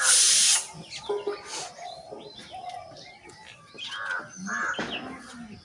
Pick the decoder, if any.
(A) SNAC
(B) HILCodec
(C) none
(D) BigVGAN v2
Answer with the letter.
C